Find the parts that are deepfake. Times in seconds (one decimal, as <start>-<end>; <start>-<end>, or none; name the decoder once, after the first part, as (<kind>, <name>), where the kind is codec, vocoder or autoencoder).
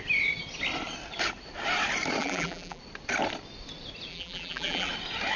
2.2-2.8 (vocoder, BigVGAN v2); 4.1-4.9